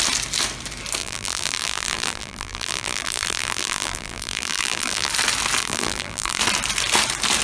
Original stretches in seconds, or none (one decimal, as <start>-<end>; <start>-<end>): 0.0-1.0; 5.1-5.6; 6.4-7.4